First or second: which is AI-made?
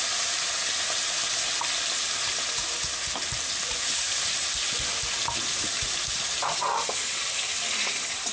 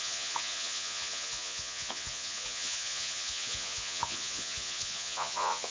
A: second